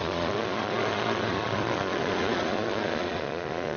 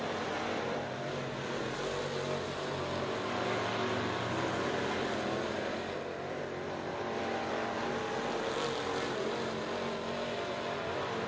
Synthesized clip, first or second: first